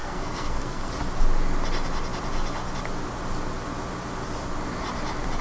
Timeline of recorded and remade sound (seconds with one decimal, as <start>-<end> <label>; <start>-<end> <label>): 0.0-0.9 remade; 0.9-5.4 recorded